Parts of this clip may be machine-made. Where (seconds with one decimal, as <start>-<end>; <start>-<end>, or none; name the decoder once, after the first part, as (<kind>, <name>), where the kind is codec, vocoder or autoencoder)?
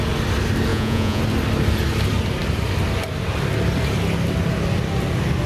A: 0.7-1.2 (vocoder, Vocos)